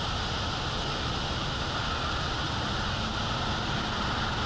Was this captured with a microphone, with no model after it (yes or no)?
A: yes